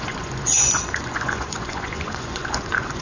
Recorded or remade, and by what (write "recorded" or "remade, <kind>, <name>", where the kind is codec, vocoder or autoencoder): remade, vocoder, Vocos